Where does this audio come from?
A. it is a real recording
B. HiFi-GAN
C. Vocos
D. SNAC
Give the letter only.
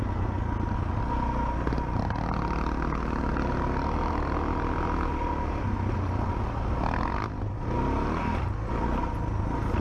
A